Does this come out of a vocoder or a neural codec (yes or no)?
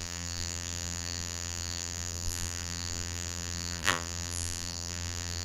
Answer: yes